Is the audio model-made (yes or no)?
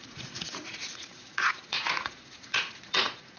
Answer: yes